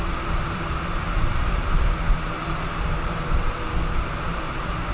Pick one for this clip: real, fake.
fake